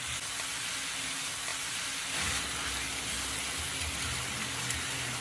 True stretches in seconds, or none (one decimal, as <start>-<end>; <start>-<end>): 0.0-1.5; 2.4-5.2